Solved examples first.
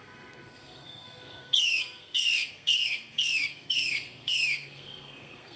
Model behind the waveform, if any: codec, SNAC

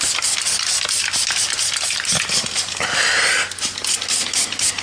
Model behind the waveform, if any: none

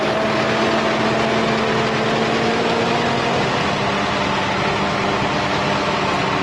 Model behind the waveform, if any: none